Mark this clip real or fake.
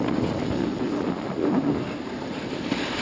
real